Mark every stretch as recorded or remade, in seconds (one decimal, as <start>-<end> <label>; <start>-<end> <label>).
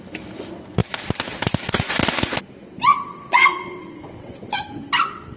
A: 0.0-2.9 recorded; 2.9-4.6 remade; 4.6-5.4 recorded